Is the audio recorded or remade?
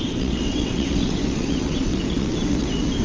remade